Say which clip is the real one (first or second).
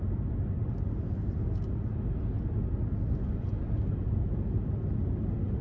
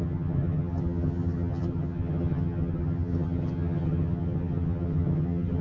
first